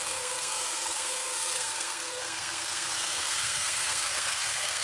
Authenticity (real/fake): fake